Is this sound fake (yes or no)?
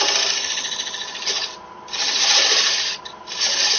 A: no